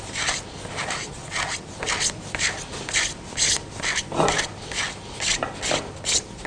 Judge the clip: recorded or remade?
recorded